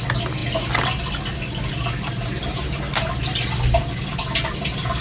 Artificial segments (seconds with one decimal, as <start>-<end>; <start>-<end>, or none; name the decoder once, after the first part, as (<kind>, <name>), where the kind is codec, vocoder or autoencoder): none